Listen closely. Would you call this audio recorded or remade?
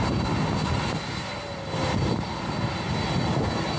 recorded